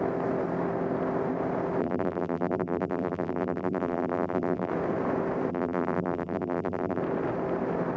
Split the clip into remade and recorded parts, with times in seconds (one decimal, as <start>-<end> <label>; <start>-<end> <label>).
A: 0.0-1.8 recorded; 1.8-4.7 remade; 4.7-5.5 recorded; 5.5-7.0 remade; 7.0-8.0 recorded